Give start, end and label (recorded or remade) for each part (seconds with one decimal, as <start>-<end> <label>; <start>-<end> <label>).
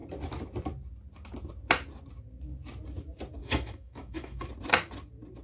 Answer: 0.0-3.4 recorded; 3.4-4.5 remade; 4.5-5.4 recorded